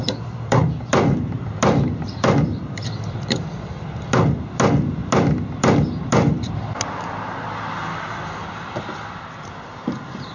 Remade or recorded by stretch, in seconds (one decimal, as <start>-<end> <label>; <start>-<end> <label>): 0.0-3.7 remade; 3.7-10.3 recorded